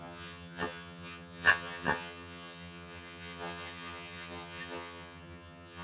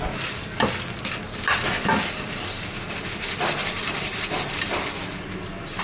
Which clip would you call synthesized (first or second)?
first